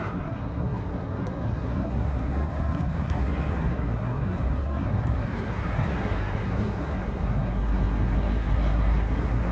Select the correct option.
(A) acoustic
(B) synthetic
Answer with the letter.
B